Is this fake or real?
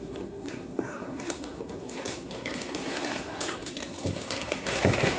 fake